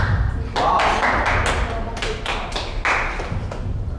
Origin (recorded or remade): recorded